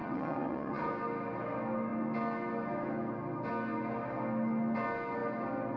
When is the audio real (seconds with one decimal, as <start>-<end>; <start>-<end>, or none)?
0.9-5.8